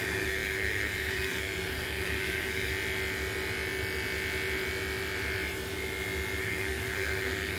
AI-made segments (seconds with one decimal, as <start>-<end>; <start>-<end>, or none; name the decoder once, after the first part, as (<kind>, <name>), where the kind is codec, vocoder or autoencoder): 0.0-2.7 (codec, SNAC); 6.4-7.6